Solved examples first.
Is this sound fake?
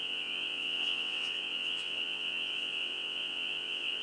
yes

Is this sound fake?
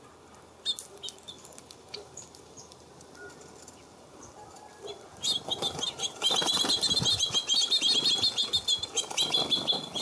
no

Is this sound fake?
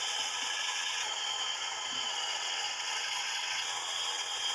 yes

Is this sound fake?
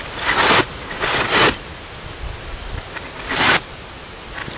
no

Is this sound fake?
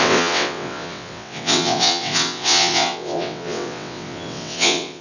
yes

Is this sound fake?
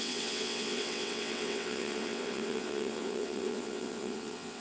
yes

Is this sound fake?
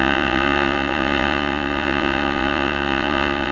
yes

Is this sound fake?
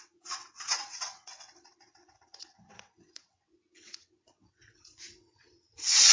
yes